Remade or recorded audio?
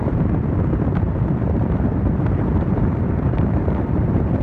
remade